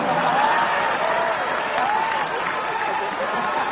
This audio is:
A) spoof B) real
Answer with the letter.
B